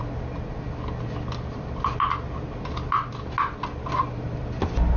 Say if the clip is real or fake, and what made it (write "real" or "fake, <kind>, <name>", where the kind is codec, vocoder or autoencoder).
real